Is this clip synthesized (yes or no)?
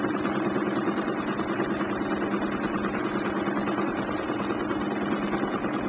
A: no